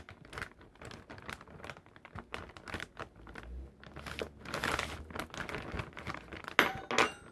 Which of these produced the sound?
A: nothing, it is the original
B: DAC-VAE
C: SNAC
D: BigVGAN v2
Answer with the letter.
A